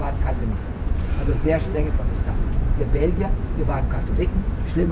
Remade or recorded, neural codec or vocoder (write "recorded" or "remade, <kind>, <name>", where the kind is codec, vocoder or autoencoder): remade, vocoder, Vocos